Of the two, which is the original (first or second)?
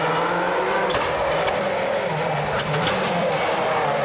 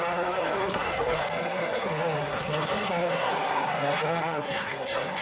first